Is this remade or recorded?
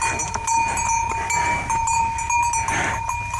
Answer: recorded